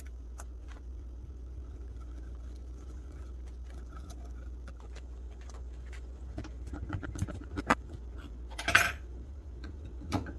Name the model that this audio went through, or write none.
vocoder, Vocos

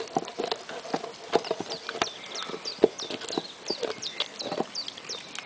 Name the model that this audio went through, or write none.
none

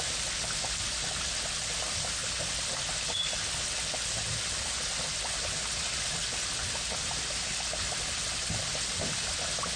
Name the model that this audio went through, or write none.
none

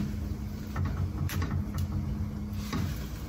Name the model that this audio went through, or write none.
none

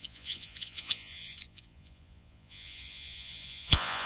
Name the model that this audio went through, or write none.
vocoder, Vocos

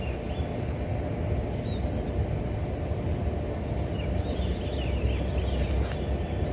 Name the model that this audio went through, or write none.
none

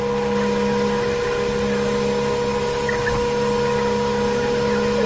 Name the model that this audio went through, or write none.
none